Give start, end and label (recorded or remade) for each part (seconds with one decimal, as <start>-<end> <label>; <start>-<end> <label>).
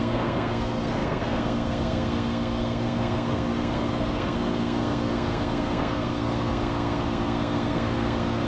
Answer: 0.0-8.5 remade